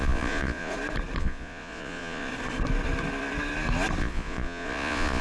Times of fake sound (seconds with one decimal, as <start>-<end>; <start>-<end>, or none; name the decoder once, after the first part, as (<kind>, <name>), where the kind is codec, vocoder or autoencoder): 0.0-0.7 (vocoder, Vocos); 1.2-2.3; 4.0-5.2